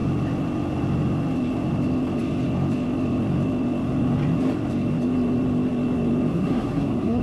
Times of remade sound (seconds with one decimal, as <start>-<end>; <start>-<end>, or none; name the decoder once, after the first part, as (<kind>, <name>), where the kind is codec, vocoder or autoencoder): 6.3-7.2 (codec, SNAC)